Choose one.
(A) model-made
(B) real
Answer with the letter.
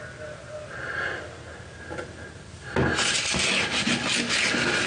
B